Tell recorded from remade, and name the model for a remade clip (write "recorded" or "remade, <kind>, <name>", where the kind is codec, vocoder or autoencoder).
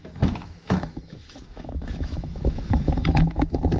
remade, autoencoder, DAC-VAE